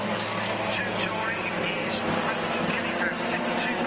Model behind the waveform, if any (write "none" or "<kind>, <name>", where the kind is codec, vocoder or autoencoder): none